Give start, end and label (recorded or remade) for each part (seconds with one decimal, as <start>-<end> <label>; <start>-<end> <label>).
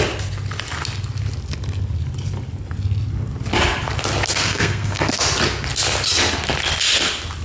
0.0-4.3 recorded; 4.3-5.2 remade; 5.2-7.4 recorded